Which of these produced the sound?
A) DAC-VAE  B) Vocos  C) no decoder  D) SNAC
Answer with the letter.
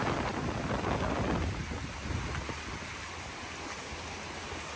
C